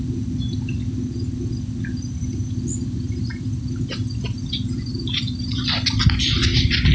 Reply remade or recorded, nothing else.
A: recorded